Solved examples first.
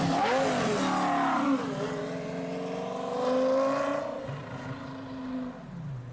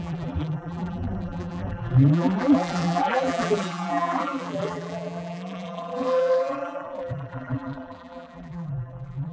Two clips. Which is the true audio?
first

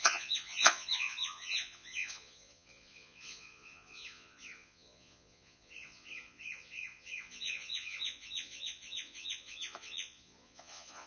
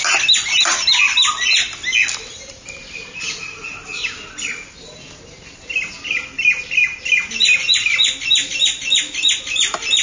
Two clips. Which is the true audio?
second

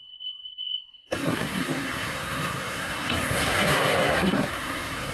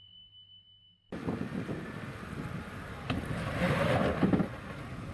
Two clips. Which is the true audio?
second